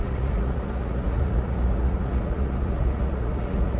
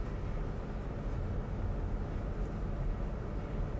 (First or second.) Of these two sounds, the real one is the second